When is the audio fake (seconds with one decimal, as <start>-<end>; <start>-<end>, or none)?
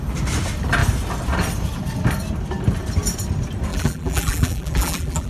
3.7-5.3